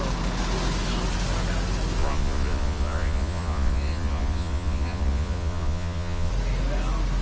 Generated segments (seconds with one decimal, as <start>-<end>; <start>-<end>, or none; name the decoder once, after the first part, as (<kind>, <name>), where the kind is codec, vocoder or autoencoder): 2.0-6.3 (vocoder, Vocos)